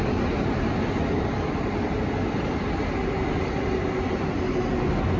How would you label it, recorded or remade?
recorded